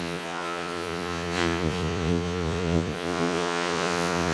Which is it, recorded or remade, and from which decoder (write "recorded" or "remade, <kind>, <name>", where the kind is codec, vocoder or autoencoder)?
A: remade, vocoder, Vocos